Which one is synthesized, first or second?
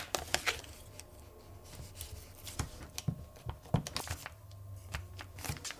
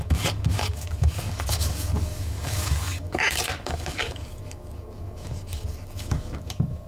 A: second